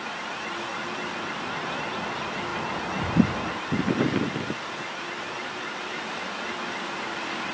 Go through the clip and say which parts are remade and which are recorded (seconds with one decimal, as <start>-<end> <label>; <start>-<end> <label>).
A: 0.0-7.5 recorded